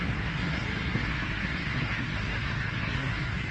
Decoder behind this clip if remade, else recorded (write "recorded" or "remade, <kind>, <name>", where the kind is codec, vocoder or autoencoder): remade, codec, SNAC